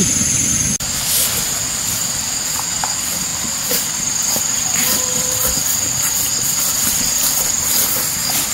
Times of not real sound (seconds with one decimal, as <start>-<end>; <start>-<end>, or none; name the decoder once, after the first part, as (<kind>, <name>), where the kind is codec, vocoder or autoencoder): none